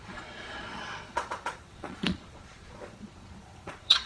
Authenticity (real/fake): fake